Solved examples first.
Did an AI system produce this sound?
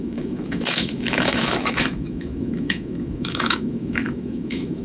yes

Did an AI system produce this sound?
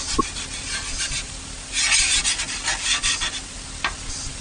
no